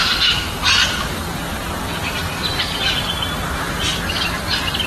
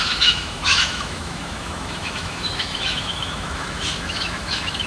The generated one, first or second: second